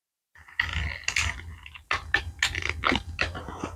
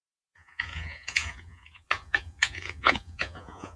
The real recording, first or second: first